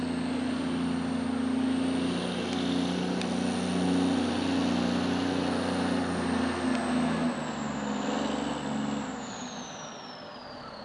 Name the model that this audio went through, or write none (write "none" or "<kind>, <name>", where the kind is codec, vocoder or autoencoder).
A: none